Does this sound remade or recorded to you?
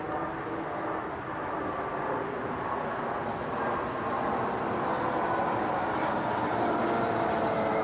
recorded